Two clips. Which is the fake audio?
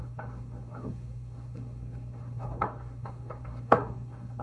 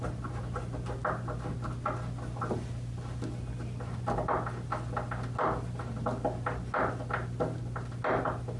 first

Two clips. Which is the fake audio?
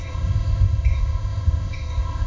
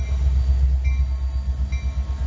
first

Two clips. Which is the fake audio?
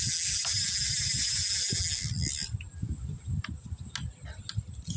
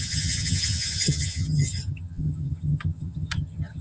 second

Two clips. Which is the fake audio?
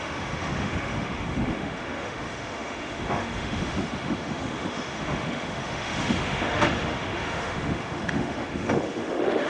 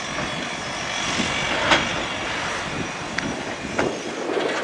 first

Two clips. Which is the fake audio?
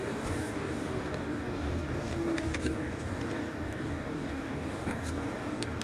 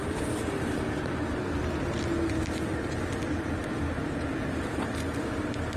first